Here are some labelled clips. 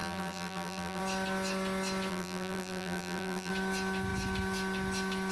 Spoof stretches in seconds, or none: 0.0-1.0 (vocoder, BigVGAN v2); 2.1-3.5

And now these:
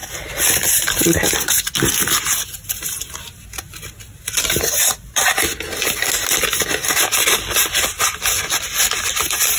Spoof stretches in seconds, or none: 7.6-8.2 (vocoder, BigVGAN v2)

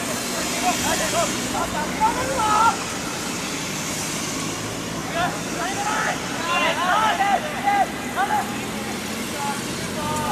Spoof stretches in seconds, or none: 5.0-6.6 (vocoder, BigVGAN v2)

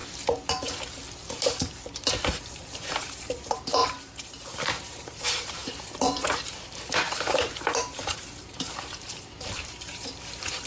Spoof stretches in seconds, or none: 2.3-10.7 (vocoder, BigVGAN v2)

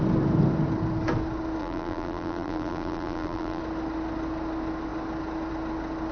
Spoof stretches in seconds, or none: 1.6-3.6 (vocoder, BigVGAN v2)

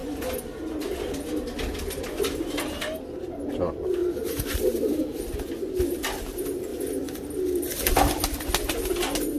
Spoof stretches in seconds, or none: 4.0-5.0 (vocoder, BigVGAN v2)

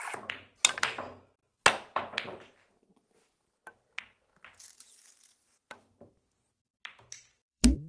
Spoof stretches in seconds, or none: 6.7-7.9 (vocoder, BigVGAN v2)

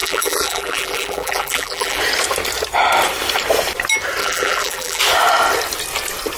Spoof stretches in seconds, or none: 0.0-2.0 (vocoder, BigVGAN v2); 4.2-5.0